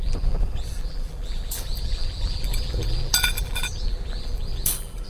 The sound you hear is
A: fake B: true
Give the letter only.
A